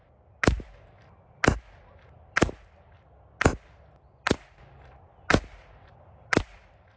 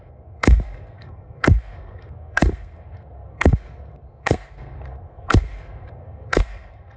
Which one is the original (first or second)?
first